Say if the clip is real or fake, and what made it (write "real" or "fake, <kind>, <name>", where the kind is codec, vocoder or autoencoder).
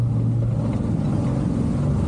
real